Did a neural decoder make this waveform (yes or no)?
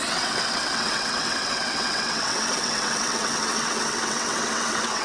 yes